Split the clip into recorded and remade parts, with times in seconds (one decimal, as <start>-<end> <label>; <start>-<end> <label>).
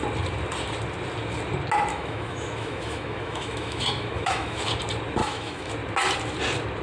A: 0.0-1.9 recorded; 1.9-4.7 remade; 4.7-5.2 recorded; 5.2-5.7 remade; 5.7-6.8 recorded